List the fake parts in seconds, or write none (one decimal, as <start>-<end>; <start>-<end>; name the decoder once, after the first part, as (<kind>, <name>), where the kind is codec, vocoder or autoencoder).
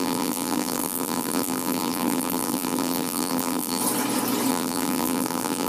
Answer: 0.0-3.8 (vocoder, BigVGAN v2); 4.5-5.7